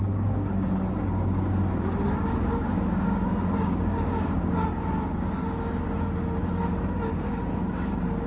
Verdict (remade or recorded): remade